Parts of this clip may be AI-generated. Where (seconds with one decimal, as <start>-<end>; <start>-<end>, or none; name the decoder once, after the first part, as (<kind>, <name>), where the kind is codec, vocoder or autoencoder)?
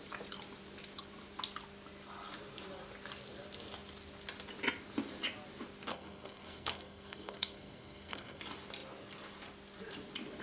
5.9-8.4 (codec, SNAC)